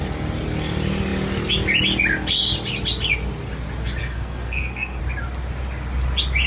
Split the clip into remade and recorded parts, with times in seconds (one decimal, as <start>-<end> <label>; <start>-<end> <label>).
0.0-4.0 recorded; 4.0-5.0 remade; 5.0-6.5 recorded